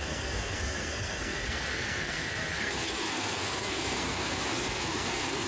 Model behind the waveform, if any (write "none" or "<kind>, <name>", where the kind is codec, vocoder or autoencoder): codec, SNAC